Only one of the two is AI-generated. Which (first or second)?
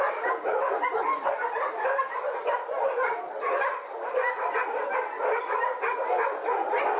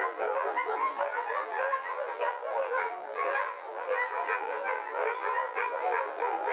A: second